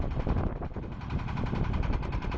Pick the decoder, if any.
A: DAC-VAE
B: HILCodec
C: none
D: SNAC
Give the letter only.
C